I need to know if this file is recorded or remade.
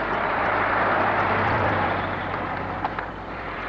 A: remade